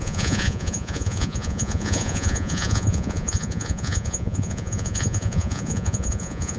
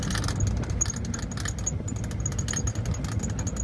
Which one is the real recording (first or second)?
second